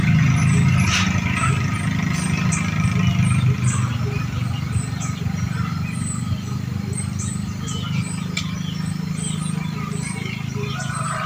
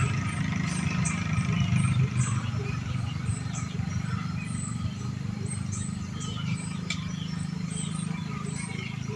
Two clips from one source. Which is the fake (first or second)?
second